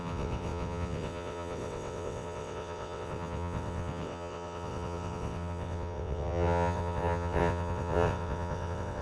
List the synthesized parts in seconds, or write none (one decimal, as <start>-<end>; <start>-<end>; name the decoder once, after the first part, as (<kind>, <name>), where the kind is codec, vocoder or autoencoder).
0.0-9.0 (vocoder, WaveNeXt)